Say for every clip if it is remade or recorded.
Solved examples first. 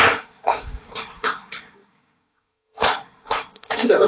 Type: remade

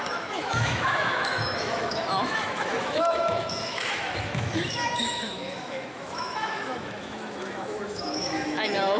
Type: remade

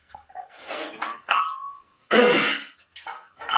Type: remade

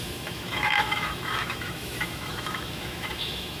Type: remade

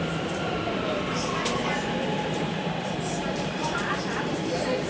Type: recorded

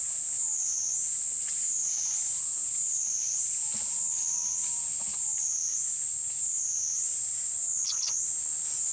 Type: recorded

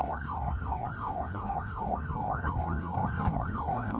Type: remade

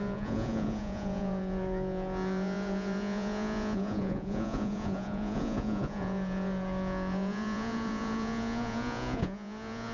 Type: remade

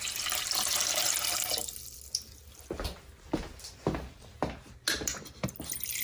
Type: recorded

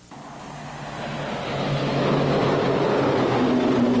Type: recorded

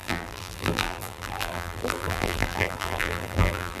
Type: remade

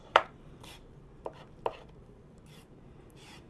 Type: remade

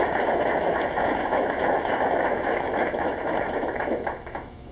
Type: remade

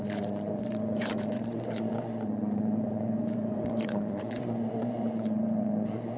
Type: remade